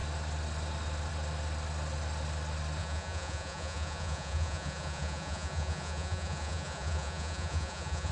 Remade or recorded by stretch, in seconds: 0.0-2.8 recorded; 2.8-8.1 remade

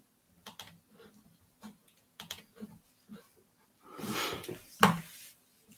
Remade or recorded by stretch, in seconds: 0.0-1.8 recorded; 1.8-2.4 remade; 2.4-5.8 recorded

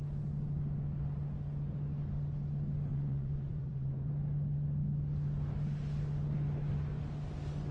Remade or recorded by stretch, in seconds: 0.0-2.9 recorded; 2.9-4.1 remade; 4.1-7.7 recorded

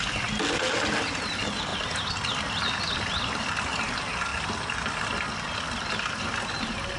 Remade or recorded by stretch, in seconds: 0.0-7.0 recorded

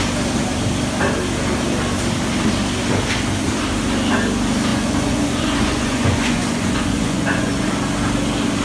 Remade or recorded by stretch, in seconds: 0.0-4.7 recorded; 4.7-7.7 remade; 7.7-8.6 recorded